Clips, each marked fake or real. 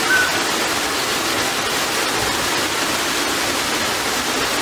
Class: real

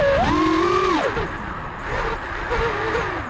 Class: real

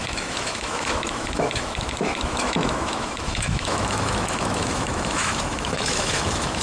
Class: fake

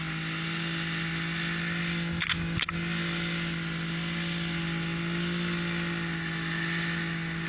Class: real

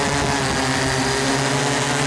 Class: real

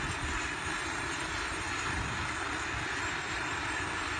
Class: fake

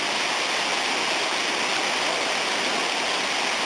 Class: real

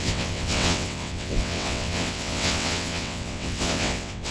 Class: fake